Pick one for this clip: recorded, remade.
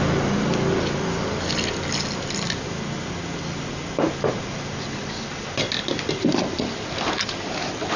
recorded